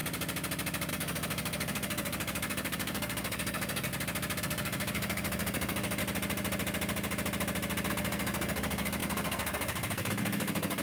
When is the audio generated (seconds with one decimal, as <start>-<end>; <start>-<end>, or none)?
0.9-3.9; 4.4-6.0; 7.9-10.8